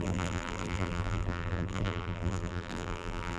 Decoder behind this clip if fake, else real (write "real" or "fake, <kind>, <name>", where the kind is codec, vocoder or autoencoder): fake, vocoder, BigVGAN v2